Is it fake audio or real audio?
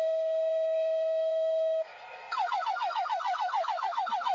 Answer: fake